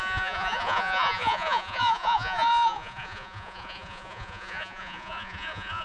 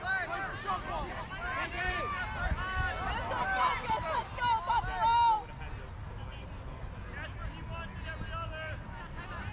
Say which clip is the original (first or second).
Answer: second